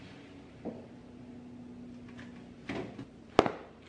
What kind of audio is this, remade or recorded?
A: recorded